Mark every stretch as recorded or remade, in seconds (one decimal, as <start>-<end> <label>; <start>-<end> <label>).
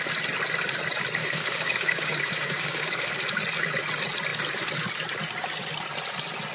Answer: 0.0-1.2 recorded; 1.2-3.1 remade; 3.1-6.5 recorded